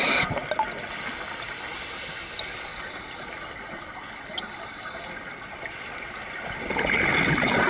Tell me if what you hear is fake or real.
real